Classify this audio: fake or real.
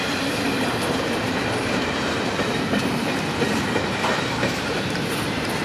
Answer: fake